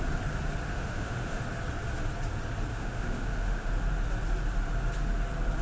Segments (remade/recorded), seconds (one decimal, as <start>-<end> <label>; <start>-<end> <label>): 0.0-0.7 recorded; 0.7-1.4 remade; 1.4-2.7 recorded; 2.7-3.7 remade; 3.7-5.6 recorded